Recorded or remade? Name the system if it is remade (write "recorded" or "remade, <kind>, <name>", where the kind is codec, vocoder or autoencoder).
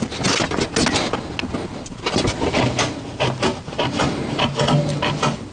recorded